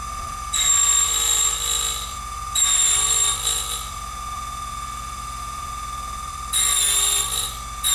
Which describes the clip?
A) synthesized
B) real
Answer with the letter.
A